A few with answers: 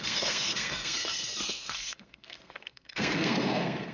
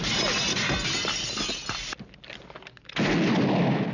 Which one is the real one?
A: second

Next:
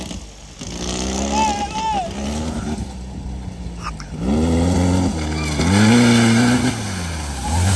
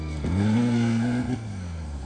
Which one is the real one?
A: first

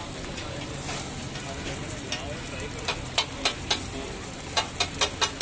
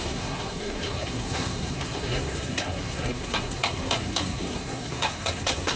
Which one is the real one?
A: first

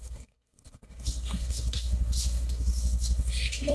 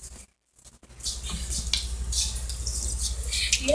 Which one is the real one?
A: second